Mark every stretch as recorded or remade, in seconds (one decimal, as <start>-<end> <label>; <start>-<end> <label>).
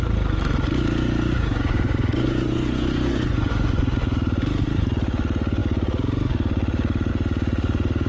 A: 0.0-1.5 recorded; 1.5-3.8 remade; 3.8-8.1 recorded